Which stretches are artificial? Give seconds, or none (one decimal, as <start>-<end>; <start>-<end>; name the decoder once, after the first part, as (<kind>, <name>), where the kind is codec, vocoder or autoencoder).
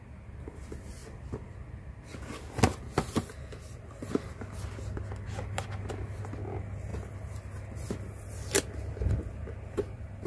none